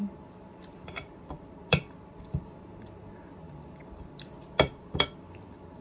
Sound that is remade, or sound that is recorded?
remade